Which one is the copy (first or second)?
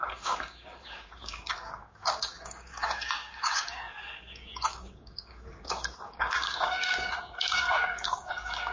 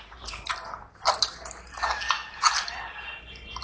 first